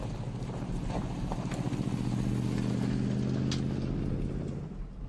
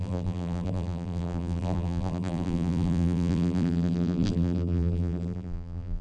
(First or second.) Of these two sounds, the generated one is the second